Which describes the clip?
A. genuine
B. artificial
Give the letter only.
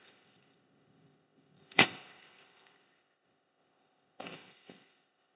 B